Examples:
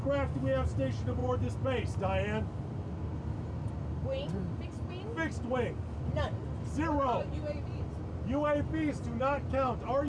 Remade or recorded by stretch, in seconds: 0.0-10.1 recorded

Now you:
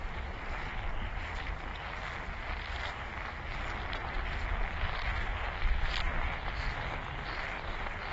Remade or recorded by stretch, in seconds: 0.0-1.7 remade; 1.7-5.6 recorded; 5.6-8.1 remade